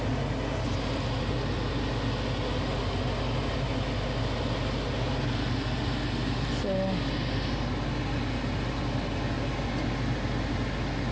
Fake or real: real